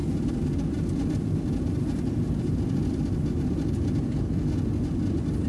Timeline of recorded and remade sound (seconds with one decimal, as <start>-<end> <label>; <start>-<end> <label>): 0.0-5.5 recorded